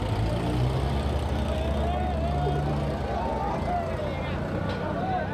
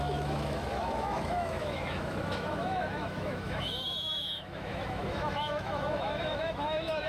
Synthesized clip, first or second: second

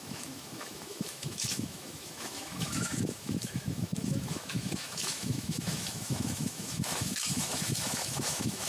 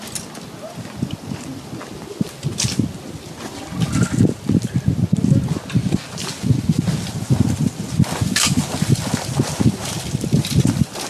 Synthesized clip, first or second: first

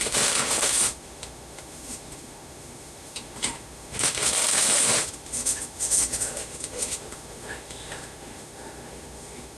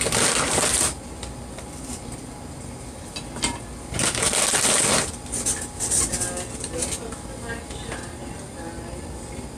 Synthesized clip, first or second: first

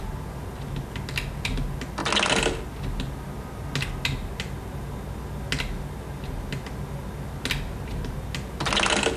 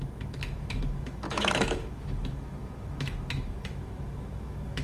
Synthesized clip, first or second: second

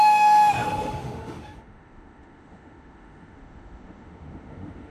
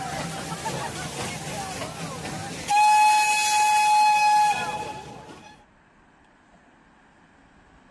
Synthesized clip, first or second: first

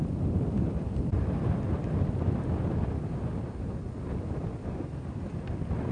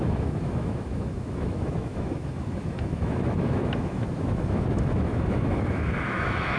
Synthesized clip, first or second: second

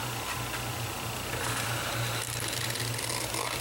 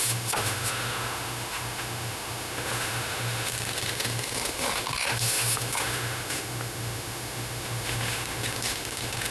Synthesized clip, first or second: second